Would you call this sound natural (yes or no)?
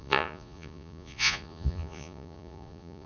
no